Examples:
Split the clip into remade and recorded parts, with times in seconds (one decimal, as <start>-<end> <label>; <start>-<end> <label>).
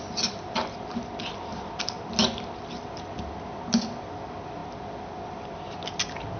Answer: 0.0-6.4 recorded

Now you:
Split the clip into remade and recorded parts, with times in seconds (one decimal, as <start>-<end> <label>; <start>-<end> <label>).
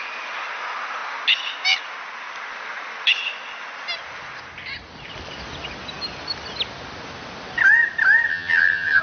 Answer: 0.0-8.3 recorded; 8.3-9.0 remade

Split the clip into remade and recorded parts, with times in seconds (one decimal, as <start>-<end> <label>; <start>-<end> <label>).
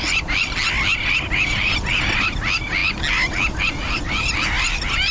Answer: 0.0-5.1 recorded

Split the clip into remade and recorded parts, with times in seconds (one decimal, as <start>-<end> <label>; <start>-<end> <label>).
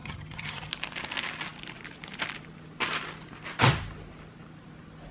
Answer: 0.0-0.7 remade; 0.7-5.1 recorded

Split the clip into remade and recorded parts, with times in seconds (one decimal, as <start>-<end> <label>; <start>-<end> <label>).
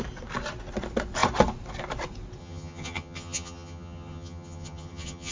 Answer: 0.0-2.4 recorded; 2.4-5.3 remade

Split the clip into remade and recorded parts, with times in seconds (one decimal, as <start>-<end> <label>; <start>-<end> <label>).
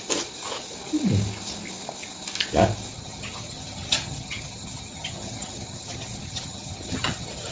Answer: 0.0-2.9 recorded; 2.9-7.5 remade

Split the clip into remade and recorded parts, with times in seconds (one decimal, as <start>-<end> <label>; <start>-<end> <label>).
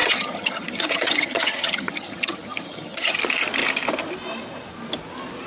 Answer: 0.0-3.2 remade; 3.2-5.5 recorded